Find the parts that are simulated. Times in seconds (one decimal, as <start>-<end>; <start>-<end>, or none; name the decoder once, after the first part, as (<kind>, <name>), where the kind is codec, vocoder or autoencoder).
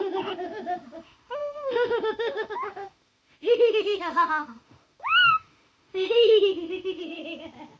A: 0.0-7.2 (autoencoder, DAC-VAE)